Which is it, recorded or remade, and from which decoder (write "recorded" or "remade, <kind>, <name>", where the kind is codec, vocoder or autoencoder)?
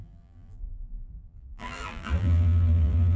remade, vocoder, BigVGAN v2